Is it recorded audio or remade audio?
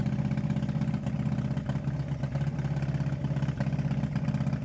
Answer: recorded